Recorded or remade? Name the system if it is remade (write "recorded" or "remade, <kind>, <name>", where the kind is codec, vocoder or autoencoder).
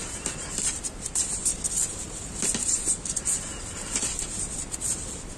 remade, vocoder, BigVGAN v2